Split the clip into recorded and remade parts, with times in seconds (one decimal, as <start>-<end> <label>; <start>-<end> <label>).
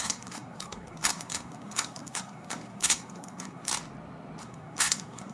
0.0-3.7 remade; 3.7-4.4 recorded; 4.4-5.3 remade